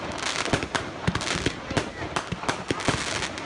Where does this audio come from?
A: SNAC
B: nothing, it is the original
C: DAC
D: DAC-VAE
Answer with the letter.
B